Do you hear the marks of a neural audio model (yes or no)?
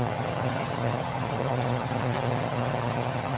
yes